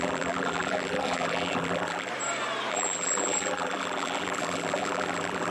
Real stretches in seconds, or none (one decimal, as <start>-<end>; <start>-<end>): 2.1-2.7